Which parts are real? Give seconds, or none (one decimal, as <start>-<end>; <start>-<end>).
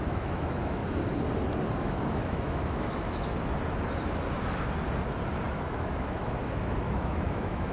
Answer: 0.8-1.8; 3.3-5.5